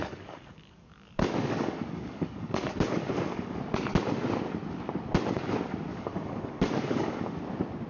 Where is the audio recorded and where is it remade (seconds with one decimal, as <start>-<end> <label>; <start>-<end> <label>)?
0.0-3.6 remade; 3.6-5.9 recorded; 5.9-7.4 remade; 7.4-7.9 recorded